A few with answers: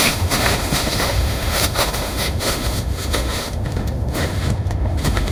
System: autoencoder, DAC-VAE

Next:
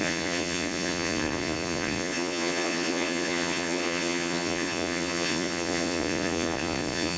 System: vocoder, Vocos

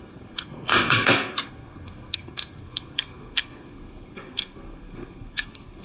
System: codec, SNAC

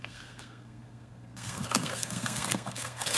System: codec, SNAC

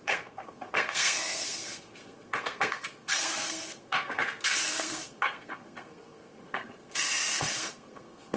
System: codec, SNAC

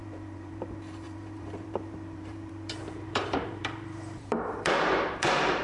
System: vocoder, BigVGAN v2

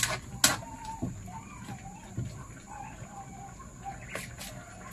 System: none